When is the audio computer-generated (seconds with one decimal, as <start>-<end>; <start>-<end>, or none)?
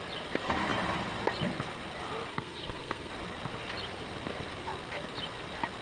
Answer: 2.3-3.1